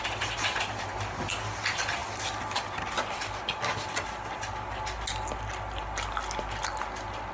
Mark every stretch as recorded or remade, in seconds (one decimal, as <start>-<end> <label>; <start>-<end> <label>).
0.0-7.3 recorded